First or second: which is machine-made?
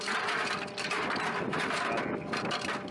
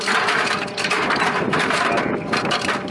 second